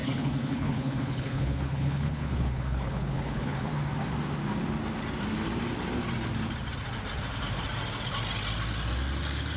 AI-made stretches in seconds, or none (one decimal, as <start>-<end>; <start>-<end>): 0.0-3.7